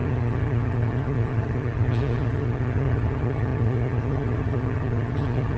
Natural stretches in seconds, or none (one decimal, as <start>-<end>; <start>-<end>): none